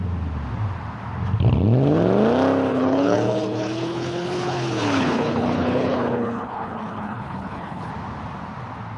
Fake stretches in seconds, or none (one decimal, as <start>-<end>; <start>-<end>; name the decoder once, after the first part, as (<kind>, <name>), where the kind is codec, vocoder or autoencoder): 2.7-7.9 (codec, HILCodec)